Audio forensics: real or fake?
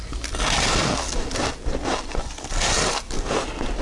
real